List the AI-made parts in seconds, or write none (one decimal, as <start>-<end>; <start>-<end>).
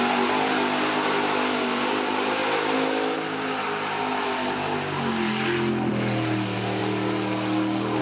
none